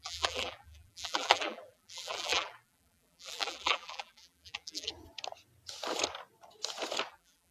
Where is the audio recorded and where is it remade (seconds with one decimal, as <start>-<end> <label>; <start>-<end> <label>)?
0.0-4.9 remade; 4.9-7.1 recorded; 7.1-7.5 remade